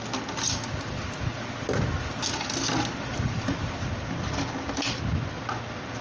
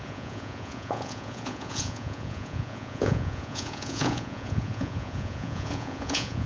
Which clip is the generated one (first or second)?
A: second